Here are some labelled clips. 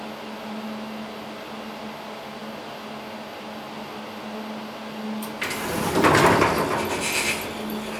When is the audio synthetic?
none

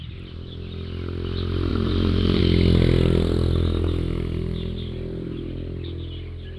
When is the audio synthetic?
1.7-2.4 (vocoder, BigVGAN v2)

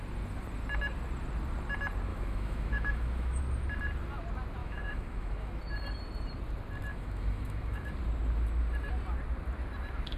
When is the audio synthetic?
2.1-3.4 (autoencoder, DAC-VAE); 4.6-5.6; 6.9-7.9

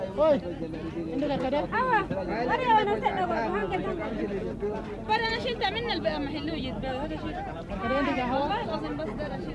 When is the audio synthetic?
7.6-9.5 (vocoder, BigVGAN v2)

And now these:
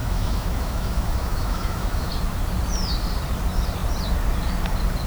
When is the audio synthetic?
0.0-2.1 (autoencoder, DAC-VAE)